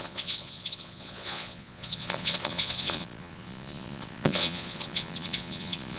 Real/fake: fake